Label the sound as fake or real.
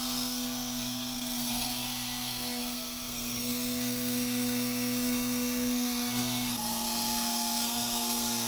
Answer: fake